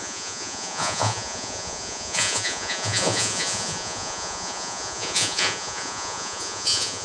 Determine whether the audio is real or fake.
fake